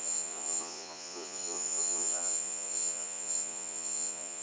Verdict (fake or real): fake